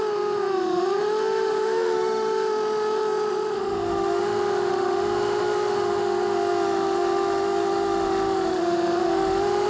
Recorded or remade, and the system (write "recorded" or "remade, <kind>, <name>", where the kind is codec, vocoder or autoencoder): remade, autoencoder, DAC-VAE